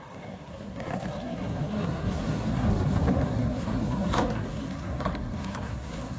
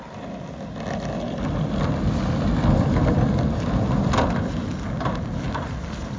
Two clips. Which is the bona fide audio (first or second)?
second